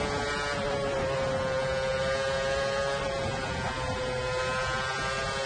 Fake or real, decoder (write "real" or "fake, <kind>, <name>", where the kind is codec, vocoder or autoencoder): real